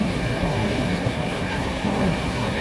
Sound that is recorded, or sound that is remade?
remade